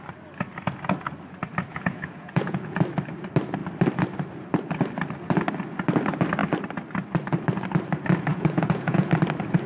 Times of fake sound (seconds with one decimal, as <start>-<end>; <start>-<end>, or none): 1.7-2.8; 8.3-9.1

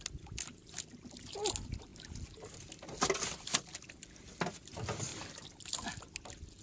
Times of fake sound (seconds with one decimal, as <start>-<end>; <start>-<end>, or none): none

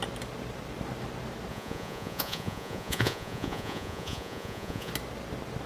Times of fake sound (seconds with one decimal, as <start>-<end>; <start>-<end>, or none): 1.5-4.9

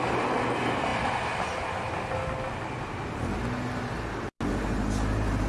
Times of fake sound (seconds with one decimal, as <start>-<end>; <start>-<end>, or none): none

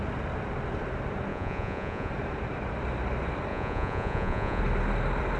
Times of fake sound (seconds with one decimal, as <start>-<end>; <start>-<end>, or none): 1.3-2.1; 3.5-4.6